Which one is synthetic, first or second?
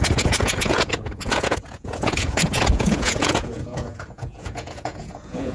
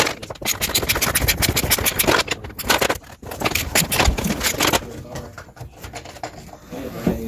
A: first